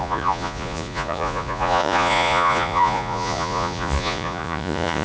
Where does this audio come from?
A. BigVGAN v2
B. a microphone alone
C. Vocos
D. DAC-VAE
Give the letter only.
C